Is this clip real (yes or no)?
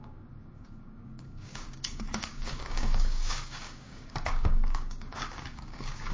no